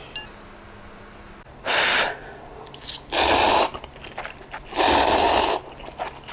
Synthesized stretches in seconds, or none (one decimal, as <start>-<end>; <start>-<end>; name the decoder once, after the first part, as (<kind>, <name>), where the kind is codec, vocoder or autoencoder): none